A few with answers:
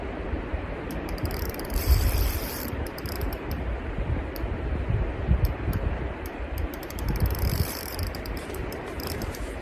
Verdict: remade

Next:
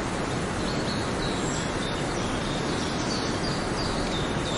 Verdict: recorded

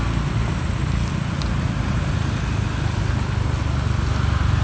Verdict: recorded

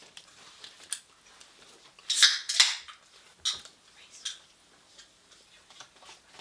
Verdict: recorded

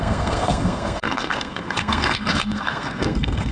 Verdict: remade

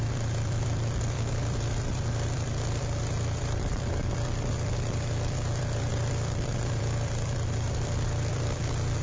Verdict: remade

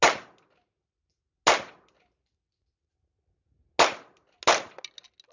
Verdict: recorded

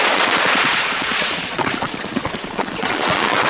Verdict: remade